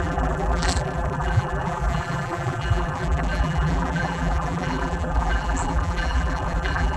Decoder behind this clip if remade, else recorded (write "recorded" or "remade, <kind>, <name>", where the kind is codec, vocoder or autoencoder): remade, vocoder, BigVGAN v2